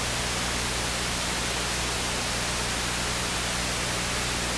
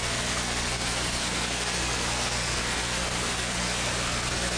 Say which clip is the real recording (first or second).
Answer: first